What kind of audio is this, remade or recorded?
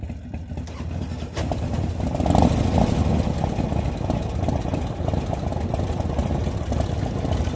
recorded